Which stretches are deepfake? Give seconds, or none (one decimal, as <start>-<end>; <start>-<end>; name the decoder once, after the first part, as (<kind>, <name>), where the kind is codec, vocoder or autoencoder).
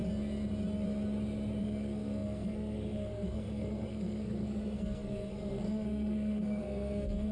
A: 1.6-7.3 (codec, SNAC)